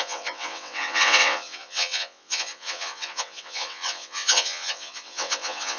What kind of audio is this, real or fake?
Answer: fake